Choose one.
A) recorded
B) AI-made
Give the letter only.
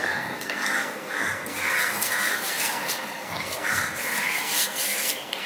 B